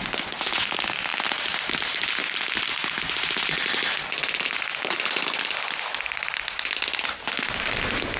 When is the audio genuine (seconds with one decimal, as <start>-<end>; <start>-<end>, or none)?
0.0-8.2